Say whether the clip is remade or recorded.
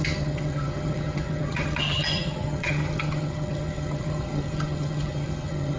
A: remade